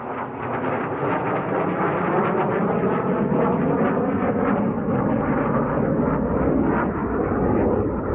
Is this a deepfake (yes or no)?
no